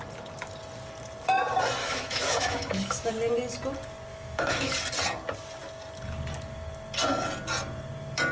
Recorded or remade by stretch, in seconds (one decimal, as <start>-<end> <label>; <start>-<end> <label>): 0.0-1.8 recorded; 1.8-3.1 remade; 3.1-4.1 recorded; 4.1-4.7 remade; 4.7-8.3 recorded